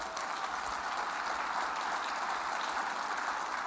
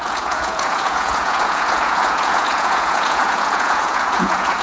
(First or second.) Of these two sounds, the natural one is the first